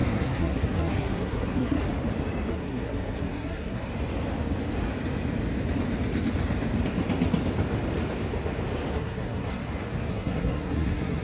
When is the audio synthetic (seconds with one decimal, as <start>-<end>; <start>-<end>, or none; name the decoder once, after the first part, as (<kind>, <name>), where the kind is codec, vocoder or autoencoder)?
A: 0.0-1.8 (codec, SNAC); 2.5-3.9; 8.9-9.6; 10.1-11.2